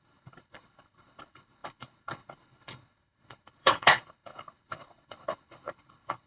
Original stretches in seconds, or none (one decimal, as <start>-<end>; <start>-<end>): none